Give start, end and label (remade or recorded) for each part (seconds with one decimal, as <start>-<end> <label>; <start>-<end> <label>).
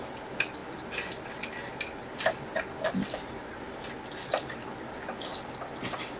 0.0-6.2 recorded